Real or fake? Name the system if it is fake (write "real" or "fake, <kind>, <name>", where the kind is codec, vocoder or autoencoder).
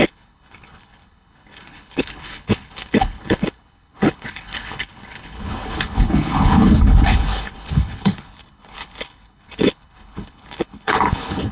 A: fake, codec, HILCodec